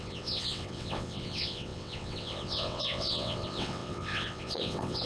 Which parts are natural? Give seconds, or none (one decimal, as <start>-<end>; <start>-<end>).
none